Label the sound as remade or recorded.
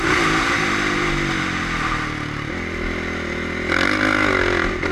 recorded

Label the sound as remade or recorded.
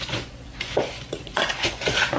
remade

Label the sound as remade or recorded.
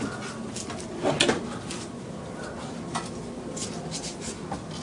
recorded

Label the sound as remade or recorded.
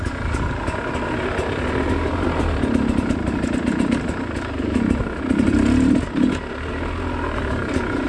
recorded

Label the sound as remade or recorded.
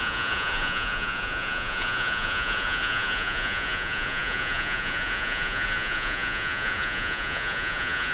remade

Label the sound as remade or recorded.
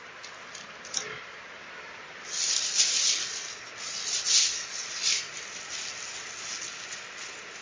recorded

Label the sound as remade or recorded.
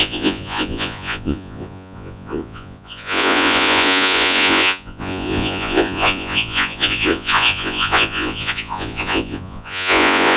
remade